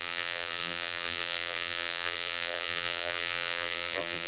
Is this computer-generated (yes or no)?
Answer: yes